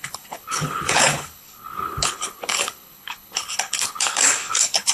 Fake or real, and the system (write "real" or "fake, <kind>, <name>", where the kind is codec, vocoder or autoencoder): fake, codec, HILCodec